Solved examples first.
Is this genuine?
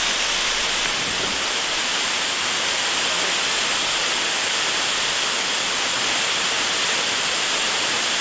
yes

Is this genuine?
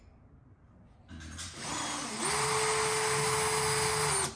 yes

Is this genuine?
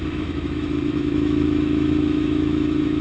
no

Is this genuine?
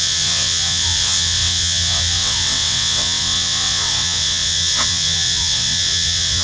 no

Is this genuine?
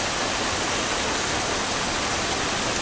yes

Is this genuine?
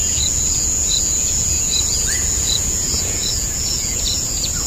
no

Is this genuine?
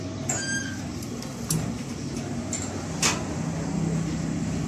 yes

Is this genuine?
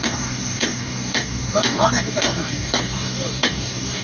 no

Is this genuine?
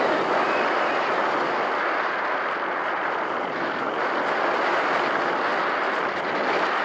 yes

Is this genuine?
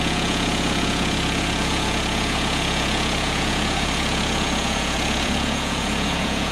no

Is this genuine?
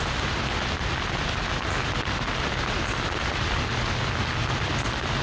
yes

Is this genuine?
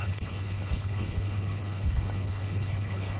no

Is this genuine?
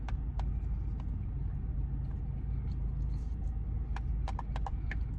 yes